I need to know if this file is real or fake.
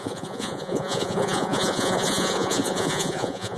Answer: fake